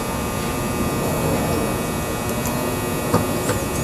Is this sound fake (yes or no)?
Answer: no